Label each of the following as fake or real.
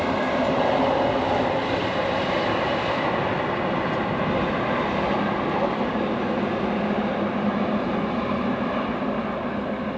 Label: real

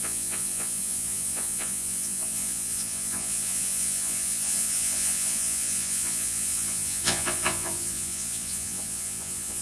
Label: fake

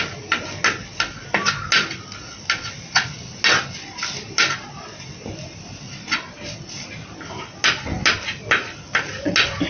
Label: real